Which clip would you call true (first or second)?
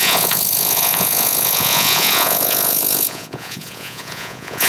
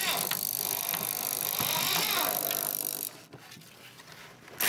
second